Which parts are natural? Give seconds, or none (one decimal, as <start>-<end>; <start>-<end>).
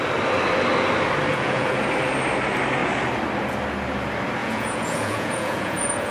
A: 0.0-1.3; 1.8-4.4